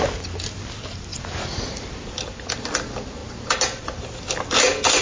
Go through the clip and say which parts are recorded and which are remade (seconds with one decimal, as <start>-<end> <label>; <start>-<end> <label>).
0.0-5.0 recorded